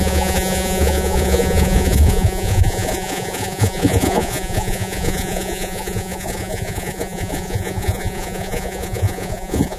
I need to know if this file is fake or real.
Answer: fake